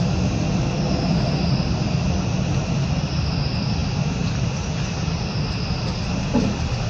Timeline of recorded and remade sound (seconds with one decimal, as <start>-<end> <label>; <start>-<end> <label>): 0.0-6.9 recorded